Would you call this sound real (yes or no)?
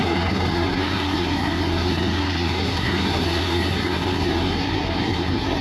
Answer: no